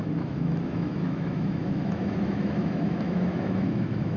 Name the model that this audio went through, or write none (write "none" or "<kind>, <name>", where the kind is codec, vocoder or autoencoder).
autoencoder, DAC-VAE